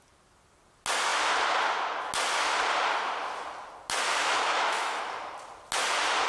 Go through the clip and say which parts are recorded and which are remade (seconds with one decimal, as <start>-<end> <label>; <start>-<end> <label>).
0.0-4.2 recorded; 4.2-5.0 remade; 5.0-6.3 recorded